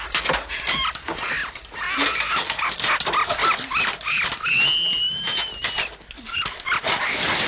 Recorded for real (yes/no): yes